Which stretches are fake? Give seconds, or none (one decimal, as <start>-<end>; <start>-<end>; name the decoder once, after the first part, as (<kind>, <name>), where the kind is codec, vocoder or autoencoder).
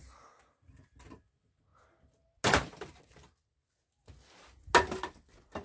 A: none